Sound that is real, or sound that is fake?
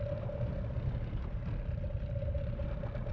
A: real